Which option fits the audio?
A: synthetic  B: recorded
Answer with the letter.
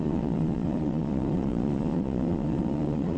A